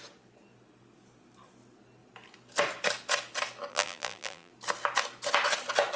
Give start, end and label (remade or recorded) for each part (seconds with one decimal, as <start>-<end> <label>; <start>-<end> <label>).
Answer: 0.0-3.7 recorded; 3.7-4.5 remade; 4.5-6.0 recorded